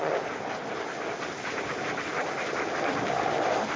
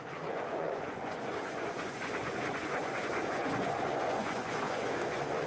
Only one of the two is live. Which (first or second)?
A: first